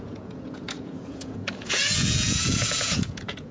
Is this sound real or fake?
fake